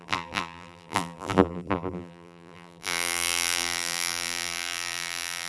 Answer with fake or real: fake